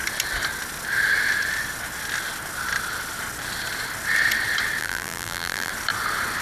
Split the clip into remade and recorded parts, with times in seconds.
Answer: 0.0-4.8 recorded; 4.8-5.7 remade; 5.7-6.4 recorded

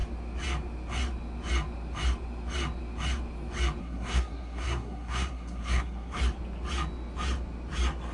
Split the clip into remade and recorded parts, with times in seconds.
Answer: 0.0-3.8 recorded; 3.8-6.2 remade; 6.2-8.1 recorded

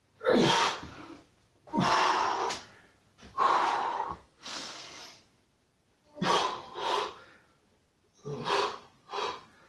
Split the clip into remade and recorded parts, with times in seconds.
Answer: 0.0-3.9 recorded; 3.9-5.0 remade; 5.0-9.7 recorded

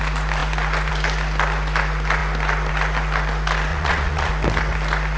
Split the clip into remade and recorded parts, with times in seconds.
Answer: 0.0-3.7 recorded; 3.7-4.3 remade; 4.3-5.2 recorded

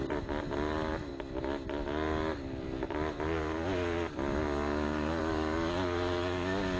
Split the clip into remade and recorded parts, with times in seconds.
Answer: 0.0-6.8 recorded

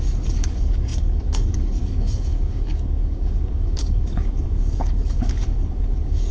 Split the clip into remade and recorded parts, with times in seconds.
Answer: 0.0-6.3 remade